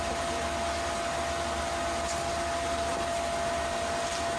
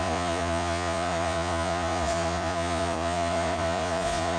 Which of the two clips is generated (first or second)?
second